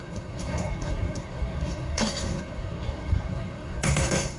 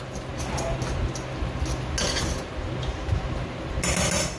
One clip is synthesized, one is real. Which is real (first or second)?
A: second